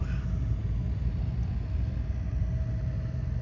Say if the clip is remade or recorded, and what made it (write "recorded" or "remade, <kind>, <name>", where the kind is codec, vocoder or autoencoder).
recorded